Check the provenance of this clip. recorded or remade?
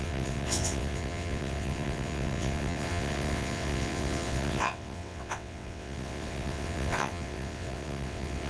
remade